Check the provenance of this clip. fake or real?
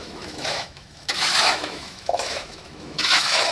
fake